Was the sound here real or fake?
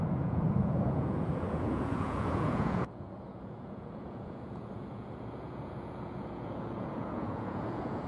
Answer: fake